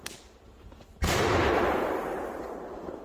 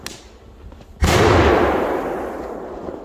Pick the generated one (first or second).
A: first